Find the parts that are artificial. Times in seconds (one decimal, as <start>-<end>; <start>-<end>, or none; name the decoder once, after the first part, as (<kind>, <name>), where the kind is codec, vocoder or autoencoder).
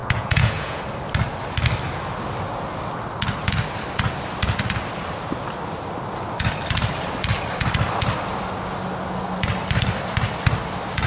0.0-0.8 (vocoder, Vocos)